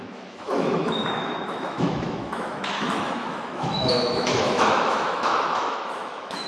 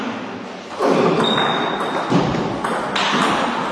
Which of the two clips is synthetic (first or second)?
first